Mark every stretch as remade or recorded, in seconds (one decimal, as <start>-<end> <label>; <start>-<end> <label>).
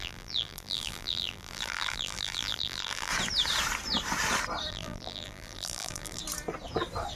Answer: 0.0-3.1 remade; 3.1-4.7 recorded; 4.7-6.2 remade; 6.2-7.2 recorded